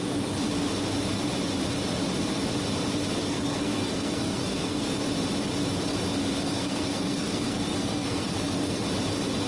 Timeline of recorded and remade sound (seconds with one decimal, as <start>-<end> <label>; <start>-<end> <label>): 0.0-3.2 recorded; 3.2-5.0 remade; 5.0-6.4 recorded; 6.4-8.8 remade; 8.8-9.5 recorded